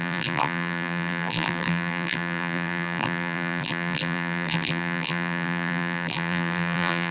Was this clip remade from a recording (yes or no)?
yes